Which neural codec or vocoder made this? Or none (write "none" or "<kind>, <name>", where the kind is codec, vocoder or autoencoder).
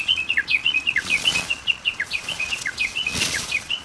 vocoder, Vocos